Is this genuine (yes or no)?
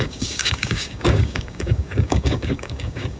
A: no